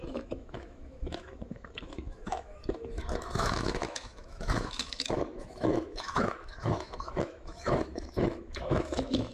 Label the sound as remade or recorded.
remade